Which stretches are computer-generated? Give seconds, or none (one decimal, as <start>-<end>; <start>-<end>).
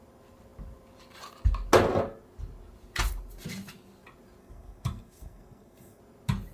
4.4-6.0